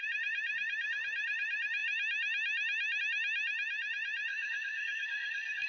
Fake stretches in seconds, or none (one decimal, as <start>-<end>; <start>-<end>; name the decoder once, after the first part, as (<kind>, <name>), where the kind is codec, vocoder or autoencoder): 4.3-5.7 (codec, SNAC)